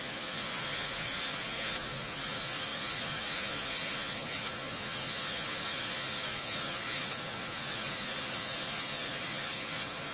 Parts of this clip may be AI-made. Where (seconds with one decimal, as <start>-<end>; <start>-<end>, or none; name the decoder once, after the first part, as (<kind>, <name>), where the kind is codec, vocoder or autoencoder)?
0.0-10.1 (vocoder, Vocos)